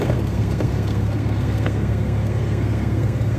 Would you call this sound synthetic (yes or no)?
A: yes